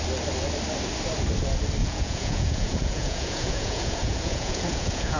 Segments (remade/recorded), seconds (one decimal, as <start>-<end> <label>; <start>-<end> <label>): 0.0-1.8 recorded; 1.8-5.2 remade

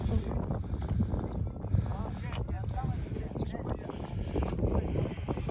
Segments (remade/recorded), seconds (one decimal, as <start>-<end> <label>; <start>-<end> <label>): 0.0-5.5 recorded

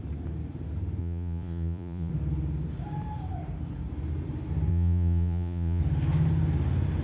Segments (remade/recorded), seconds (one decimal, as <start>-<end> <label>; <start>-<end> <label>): 0.0-1.0 recorded; 1.0-2.1 remade; 2.1-4.7 recorded; 4.7-5.8 remade; 5.8-7.0 recorded

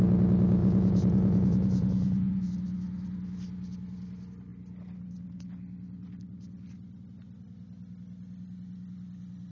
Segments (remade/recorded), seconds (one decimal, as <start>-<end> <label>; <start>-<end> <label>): 0.0-0.6 recorded; 0.6-2.4 remade; 2.4-9.5 recorded

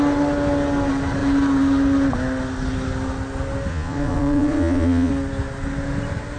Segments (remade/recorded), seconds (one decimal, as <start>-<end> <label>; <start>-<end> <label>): 0.0-3.7 recorded; 3.7-5.1 remade; 5.1-6.4 recorded

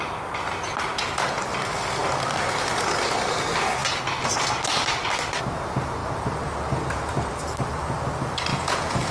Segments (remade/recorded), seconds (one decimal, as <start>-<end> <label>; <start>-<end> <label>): 0.0-8.5 recorded; 8.5-9.1 remade

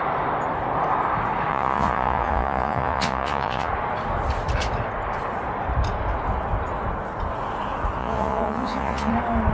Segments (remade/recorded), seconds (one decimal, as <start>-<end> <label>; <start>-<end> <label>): 0.0-1.5 recorded; 1.5-3.7 remade; 3.7-8.0 recorded; 8.0-9.1 remade; 9.1-9.5 recorded